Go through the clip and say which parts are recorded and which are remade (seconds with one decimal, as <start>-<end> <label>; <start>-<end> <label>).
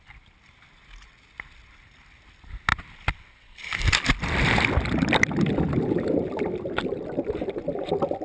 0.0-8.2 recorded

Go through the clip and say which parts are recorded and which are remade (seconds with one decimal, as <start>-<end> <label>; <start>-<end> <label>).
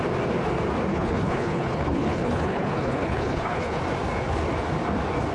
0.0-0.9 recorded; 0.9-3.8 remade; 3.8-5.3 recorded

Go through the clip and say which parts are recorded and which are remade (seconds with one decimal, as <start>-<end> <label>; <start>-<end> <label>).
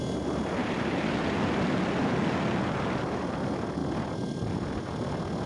0.0-5.5 recorded